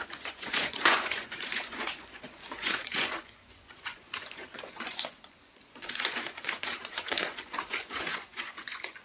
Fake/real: fake